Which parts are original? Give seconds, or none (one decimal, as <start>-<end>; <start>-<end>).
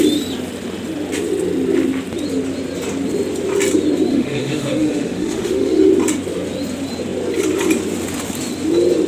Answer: 0.0-4.1; 5.9-9.1